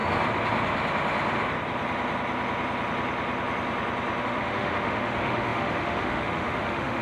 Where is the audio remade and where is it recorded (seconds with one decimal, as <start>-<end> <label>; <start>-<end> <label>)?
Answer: 0.0-4.2 recorded; 4.2-7.0 remade